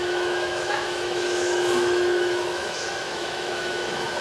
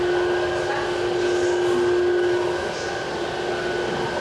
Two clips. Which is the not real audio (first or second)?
first